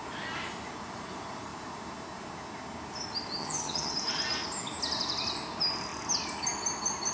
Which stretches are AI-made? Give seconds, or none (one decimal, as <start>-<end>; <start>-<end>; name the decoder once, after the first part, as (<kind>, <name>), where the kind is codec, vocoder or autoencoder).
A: 3.4-3.9 (vocoder, HiFi-GAN)